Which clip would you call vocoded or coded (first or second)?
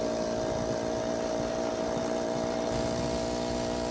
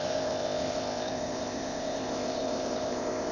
second